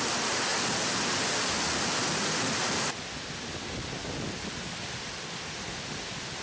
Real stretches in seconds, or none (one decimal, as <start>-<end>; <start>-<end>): 0.0-6.4